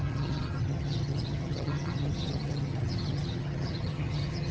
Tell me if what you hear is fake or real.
fake